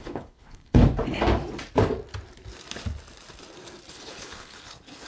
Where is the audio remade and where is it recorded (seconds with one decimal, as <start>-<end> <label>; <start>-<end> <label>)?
0.0-0.8 remade; 0.8-3.9 recorded; 3.9-5.1 remade

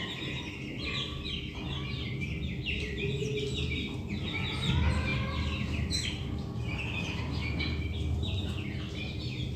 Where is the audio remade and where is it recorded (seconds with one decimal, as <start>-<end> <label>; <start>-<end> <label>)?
0.0-9.6 recorded

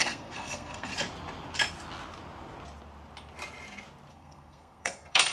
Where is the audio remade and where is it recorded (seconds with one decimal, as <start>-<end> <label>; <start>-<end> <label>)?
0.0-0.9 remade; 0.9-4.1 recorded; 4.1-5.3 remade

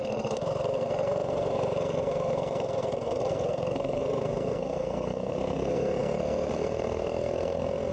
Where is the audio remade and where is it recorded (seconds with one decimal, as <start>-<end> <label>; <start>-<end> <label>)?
0.0-7.9 remade

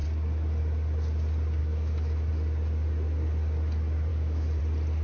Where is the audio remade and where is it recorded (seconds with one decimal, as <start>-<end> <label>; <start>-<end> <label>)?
0.0-1.6 recorded; 1.6-2.3 remade; 2.3-4.1 recorded; 4.1-4.6 remade; 4.6-5.0 recorded

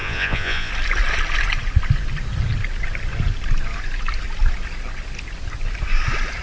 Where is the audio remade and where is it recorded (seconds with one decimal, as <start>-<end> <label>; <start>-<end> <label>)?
0.0-0.7 remade; 0.7-6.4 recorded

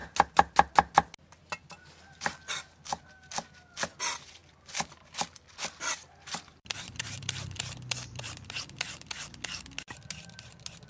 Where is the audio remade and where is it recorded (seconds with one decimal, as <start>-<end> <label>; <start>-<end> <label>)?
0.0-4.4 recorded; 4.4-9.1 remade; 9.1-10.9 recorded